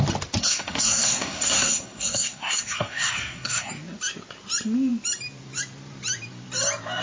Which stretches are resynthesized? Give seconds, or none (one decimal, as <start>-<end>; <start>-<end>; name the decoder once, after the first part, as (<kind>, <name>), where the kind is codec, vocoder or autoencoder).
0.4-3.7 (codec, SNAC)